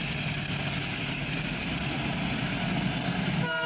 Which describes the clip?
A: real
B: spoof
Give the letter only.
A